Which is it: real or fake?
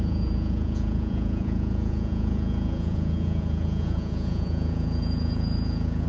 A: fake